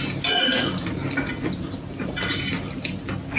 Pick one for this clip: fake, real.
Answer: real